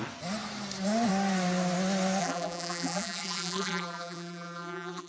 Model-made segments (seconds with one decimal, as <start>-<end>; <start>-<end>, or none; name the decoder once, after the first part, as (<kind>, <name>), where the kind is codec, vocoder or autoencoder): 2.2-5.1 (vocoder, BigVGAN v2)